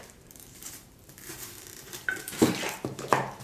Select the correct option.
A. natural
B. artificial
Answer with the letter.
B